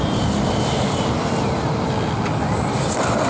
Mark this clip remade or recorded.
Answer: recorded